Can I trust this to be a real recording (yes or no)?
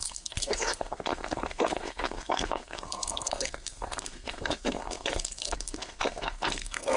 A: no